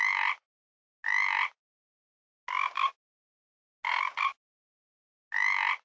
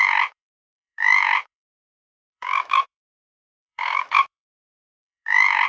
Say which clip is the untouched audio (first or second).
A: first